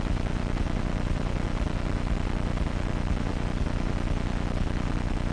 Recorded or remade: recorded